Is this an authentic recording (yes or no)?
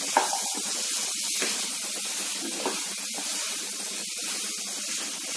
yes